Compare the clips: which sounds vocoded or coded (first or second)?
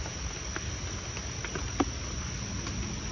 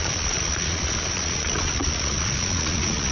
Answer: second